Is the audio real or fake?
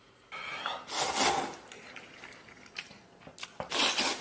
real